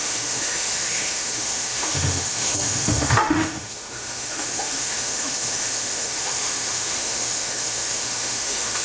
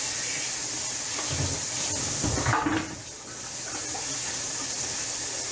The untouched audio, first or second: second